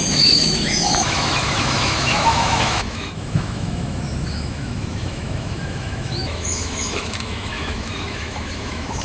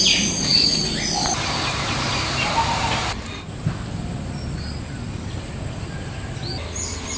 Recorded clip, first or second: second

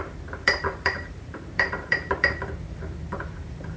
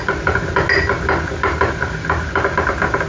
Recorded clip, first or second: second